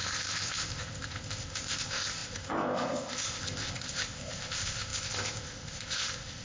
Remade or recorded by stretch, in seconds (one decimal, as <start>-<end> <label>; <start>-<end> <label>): 0.0-6.4 remade